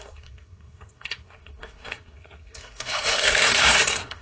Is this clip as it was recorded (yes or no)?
no